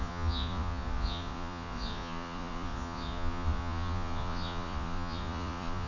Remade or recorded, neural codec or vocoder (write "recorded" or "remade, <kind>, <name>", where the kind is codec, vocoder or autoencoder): remade, vocoder, Vocos